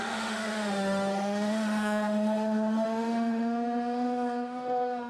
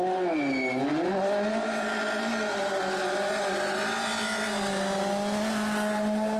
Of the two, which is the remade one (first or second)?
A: first